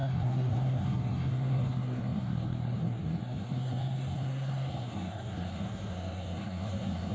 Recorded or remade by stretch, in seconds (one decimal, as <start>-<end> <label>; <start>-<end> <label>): 0.0-7.1 remade